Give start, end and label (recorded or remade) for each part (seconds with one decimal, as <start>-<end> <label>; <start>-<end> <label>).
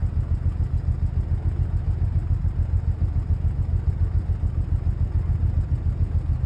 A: 0.0-6.5 recorded